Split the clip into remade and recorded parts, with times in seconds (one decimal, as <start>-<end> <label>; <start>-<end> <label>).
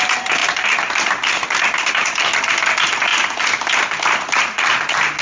0.0-0.4 recorded; 0.4-2.5 remade; 2.5-3.1 recorded; 3.1-4.4 remade; 4.4-5.2 recorded